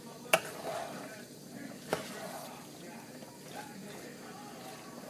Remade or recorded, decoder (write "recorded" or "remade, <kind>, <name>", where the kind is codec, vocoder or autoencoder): recorded